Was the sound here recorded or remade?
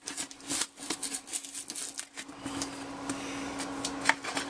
recorded